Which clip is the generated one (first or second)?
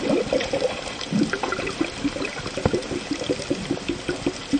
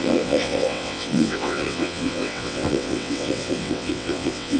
second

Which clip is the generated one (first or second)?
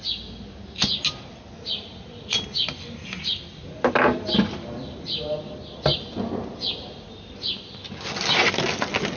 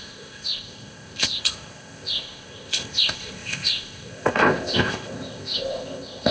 second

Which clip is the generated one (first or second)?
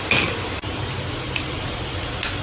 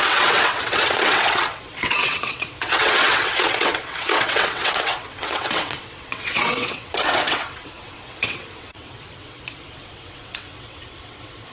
second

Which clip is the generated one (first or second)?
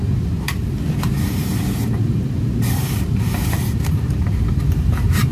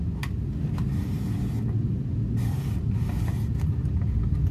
first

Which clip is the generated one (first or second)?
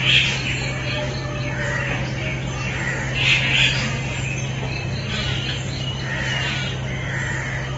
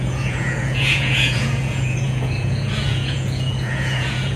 second